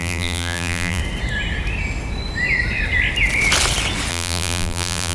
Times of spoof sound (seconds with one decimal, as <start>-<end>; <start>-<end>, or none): 0.0-1.0; 4.1-5.1

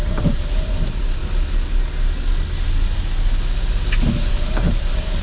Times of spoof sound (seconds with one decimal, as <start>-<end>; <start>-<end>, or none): 0.0-1.2; 4.3-5.2

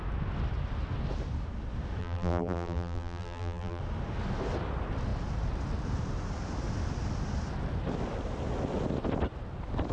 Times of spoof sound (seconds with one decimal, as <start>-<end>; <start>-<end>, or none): 2.0-3.8